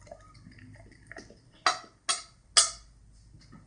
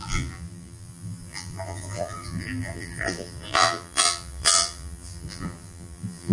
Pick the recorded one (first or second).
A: first